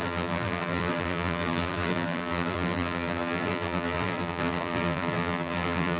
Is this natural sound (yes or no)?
no